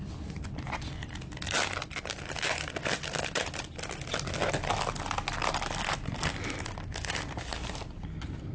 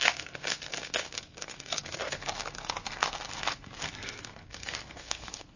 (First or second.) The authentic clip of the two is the first